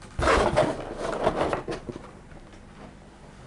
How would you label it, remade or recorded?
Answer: recorded